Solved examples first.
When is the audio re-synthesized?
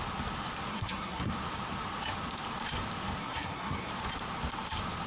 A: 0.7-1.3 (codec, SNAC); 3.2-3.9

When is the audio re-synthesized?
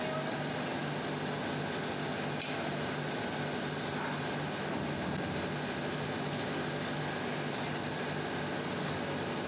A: none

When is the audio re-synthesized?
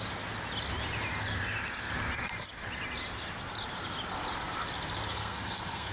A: 5.1-5.9 (codec, SNAC)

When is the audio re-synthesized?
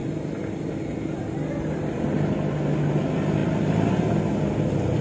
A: none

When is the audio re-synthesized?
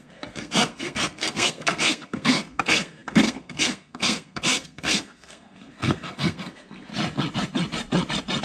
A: 0.0-6.9 (codec, SNAC)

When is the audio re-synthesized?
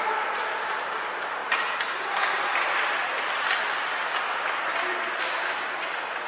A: none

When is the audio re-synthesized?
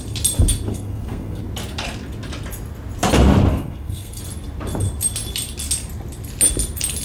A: 0.7-1.4 (codec, SNAC); 3.5-4.2